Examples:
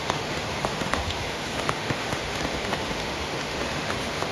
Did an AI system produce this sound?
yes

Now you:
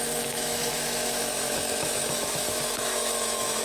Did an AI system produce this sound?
yes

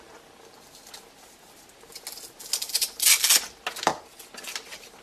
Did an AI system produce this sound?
no